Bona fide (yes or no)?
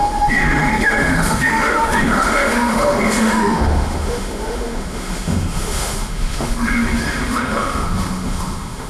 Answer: no